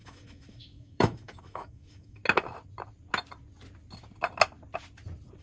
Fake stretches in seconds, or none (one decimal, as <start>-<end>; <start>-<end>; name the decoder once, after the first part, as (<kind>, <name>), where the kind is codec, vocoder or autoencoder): 0.0-2.2 (autoencoder, DAC-VAE)